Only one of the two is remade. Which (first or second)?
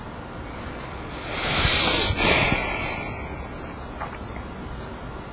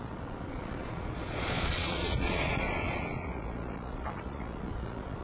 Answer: second